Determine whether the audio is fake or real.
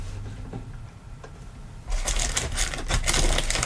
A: real